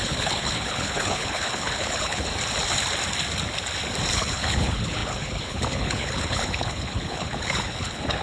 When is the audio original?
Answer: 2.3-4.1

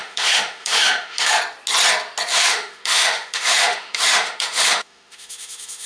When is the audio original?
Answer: 1.4-2.3